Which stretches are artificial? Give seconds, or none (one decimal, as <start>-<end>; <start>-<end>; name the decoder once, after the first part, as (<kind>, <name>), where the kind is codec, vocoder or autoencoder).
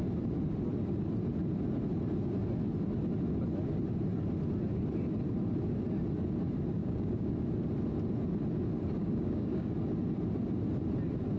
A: 6.8-7.3 (codec, DAC); 9.0-9.7